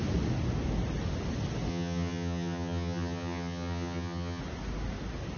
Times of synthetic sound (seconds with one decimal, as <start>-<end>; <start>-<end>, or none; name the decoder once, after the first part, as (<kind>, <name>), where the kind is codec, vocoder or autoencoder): 1.7-4.4 (vocoder, HiFi-GAN)